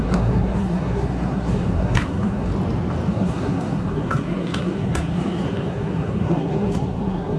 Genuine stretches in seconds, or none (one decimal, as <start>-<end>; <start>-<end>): 2.5-3.1

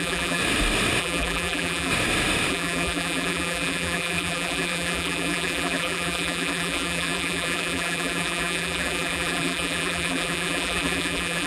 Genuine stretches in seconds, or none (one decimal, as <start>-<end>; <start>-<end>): 0.4-1.0; 1.9-2.5

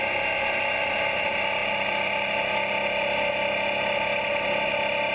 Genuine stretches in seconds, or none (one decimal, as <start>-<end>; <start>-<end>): 0.0-5.1